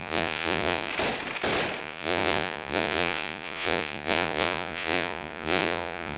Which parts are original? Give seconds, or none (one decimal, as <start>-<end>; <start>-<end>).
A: 0.9-1.8